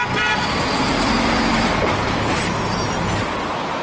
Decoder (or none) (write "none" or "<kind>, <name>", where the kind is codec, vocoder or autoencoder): none